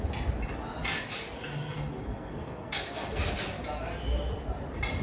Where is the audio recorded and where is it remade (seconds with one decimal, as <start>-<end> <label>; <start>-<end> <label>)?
0.0-1.5 recorded; 1.5-3.3 remade; 3.3-5.0 recorded